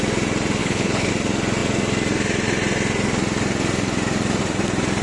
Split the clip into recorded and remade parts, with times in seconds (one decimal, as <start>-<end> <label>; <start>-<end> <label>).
0.0-0.6 recorded; 0.6-1.1 remade; 1.1-5.0 recorded